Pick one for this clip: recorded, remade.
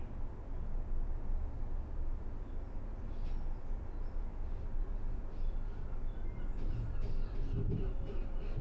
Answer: recorded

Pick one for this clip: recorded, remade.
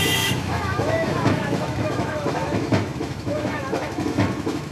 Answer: remade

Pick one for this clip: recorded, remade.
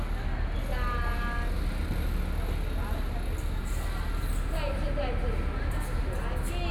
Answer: recorded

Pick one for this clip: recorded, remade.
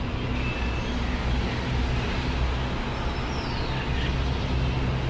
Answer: recorded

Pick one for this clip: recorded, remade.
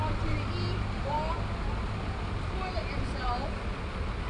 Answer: recorded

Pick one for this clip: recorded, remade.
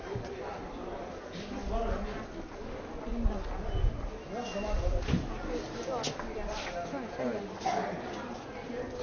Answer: recorded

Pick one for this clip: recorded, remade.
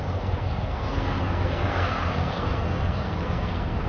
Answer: remade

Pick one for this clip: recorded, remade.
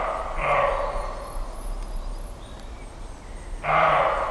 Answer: recorded